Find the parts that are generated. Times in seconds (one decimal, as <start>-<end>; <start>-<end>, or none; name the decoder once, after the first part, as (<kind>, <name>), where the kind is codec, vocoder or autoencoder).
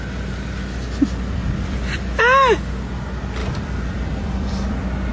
1.4-2.2 (vocoder, BigVGAN v2); 3.4-5.1